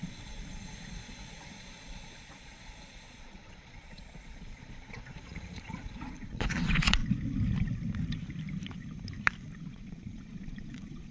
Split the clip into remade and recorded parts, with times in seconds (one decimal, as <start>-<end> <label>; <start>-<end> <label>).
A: 0.0-7.0 remade; 7.0-9.6 recorded; 9.6-11.1 remade